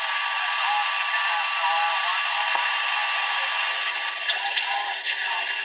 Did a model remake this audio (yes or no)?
no